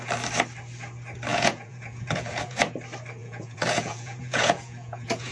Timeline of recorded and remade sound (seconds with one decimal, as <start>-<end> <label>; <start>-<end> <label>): 0.0-1.3 recorded; 1.3-2.6 remade; 2.6-3.2 recorded; 3.2-5.3 remade